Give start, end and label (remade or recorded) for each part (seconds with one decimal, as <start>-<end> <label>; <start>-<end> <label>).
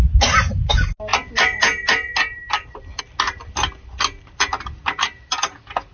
0.0-5.9 recorded